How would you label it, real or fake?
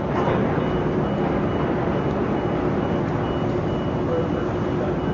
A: real